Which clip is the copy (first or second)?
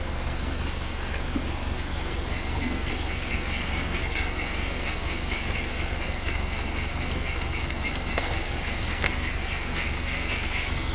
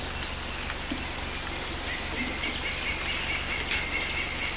first